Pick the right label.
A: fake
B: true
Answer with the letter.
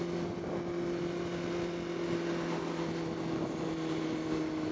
B